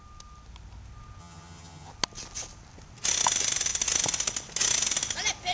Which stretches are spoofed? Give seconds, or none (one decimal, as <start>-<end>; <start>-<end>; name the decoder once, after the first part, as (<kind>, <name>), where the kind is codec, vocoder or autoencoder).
1.2-1.9 (vocoder, HiFi-GAN)